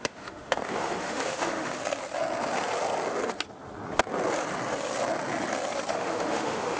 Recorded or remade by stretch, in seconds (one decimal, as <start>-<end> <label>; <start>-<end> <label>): 0.0-1.8 remade; 1.8-5.9 recorded; 5.9-6.8 remade